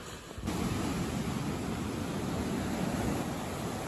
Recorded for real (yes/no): yes